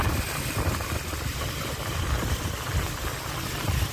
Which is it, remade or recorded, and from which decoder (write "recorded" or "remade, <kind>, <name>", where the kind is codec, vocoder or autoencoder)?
recorded